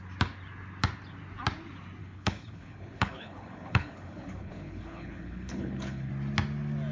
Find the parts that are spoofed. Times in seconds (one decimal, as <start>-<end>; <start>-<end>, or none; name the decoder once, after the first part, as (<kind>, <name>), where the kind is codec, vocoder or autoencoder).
2.0-6.1 (codec, HILCodec)